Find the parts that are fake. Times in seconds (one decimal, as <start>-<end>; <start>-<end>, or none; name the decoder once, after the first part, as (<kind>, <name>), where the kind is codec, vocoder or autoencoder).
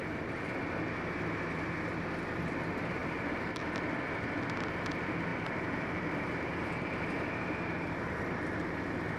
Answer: 3.0-3.6 (vocoder, BigVGAN v2); 5.3-8.7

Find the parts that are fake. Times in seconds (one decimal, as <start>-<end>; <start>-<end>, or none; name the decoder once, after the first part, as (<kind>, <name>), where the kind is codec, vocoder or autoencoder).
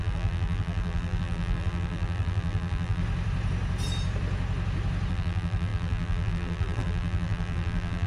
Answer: 0.0-3.0 (vocoder, BigVGAN v2); 5.1-8.1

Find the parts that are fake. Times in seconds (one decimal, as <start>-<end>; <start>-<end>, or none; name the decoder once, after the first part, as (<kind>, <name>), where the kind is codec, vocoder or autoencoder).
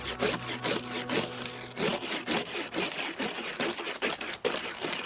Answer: none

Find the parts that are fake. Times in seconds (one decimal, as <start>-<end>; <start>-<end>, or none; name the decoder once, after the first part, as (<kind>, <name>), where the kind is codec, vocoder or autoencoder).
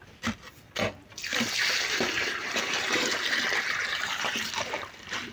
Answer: 1.3-4.5 (vocoder, BigVGAN v2)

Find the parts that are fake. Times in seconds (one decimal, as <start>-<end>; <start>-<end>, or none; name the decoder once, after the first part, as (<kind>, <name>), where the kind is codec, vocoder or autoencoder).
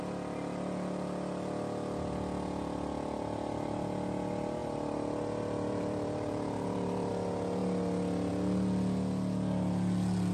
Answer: 4.6-7.1 (vocoder, BigVGAN v2)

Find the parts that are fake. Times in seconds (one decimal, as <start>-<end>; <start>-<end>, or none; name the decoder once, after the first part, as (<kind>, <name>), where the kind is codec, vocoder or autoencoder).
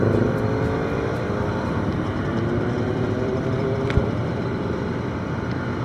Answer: 0.0-0.6 (vocoder, BigVGAN v2); 1.5-5.8